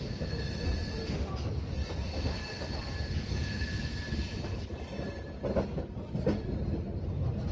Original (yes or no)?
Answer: no